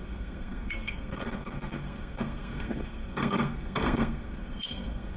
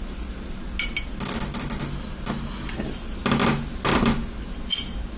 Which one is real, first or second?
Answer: second